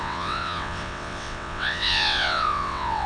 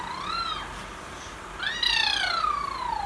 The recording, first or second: second